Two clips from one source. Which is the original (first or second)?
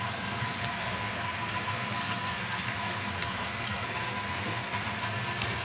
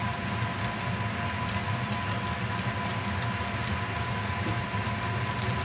second